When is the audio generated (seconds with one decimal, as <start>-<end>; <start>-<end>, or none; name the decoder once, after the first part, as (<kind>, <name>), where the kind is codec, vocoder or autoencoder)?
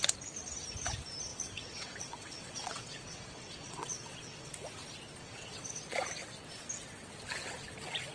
1.3-4.5 (vocoder, WaveNeXt); 5.2-5.8